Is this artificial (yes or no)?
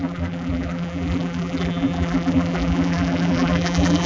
yes